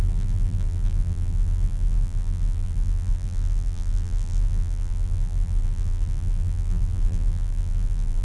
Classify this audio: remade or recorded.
remade